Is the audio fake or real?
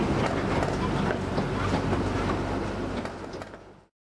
real